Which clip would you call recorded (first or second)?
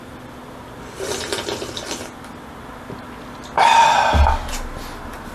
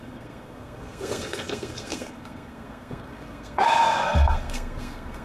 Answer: first